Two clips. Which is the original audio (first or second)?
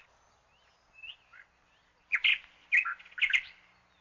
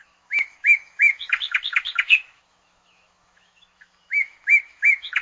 first